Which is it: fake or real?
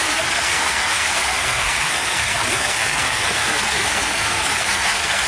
fake